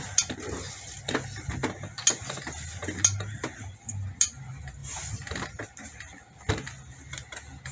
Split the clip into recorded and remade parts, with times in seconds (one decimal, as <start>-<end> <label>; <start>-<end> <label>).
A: 0.0-7.7 recorded